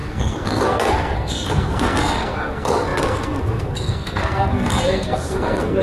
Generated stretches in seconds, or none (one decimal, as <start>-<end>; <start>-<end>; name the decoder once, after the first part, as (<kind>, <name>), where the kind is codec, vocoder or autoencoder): 0.0-5.8 (codec, SNAC)